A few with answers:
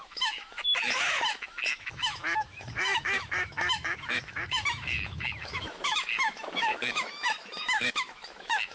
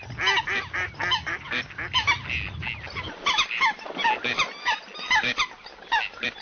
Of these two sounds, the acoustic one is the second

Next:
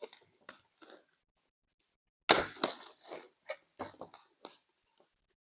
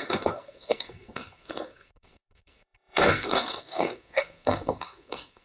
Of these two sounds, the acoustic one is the first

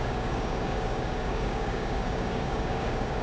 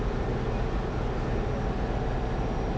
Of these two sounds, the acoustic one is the second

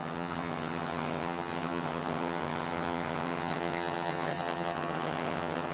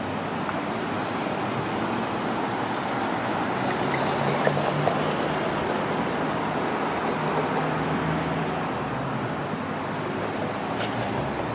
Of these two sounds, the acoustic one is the second